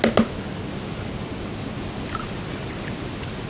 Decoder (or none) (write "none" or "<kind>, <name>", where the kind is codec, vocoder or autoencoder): none